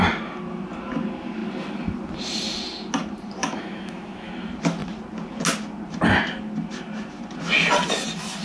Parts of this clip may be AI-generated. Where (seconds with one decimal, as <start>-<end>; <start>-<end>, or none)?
3.4-4.3